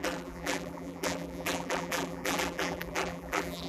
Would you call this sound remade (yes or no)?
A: yes